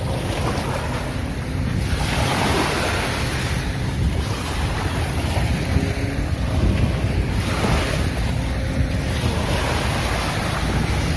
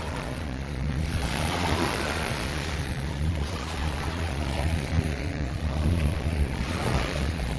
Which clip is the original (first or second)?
first